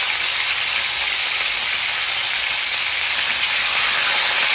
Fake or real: real